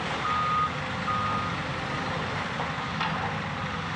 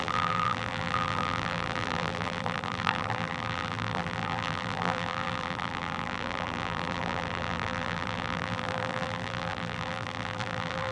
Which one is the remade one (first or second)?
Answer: second